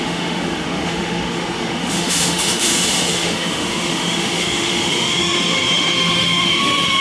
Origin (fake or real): fake